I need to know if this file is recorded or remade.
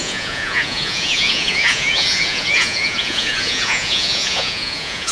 remade